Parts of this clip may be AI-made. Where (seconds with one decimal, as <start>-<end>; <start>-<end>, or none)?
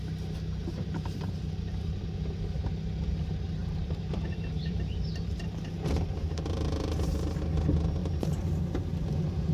0.6-2.0; 3.6-7.4; 8.0-8.6